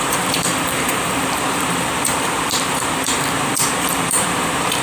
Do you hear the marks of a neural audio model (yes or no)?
yes